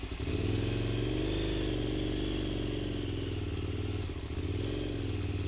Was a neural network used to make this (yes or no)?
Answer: no